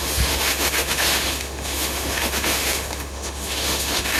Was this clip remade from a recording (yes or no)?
yes